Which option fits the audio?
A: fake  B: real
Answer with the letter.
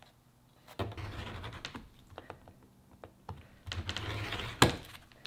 B